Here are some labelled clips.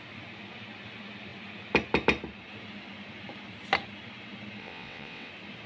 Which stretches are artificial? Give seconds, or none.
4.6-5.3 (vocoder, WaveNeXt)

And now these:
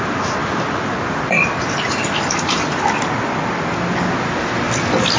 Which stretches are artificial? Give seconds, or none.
none